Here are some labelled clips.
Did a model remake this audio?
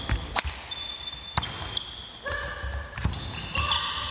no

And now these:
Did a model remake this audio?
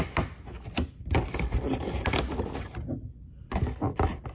no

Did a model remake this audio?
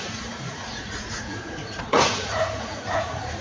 yes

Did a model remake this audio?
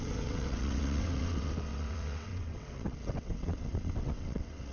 yes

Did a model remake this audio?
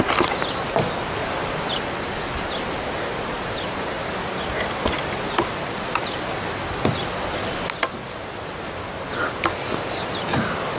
no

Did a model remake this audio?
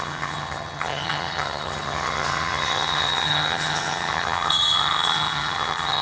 yes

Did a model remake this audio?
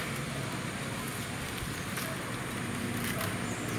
no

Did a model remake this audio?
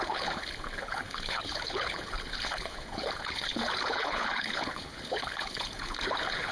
yes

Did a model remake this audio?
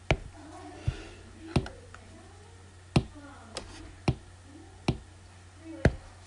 no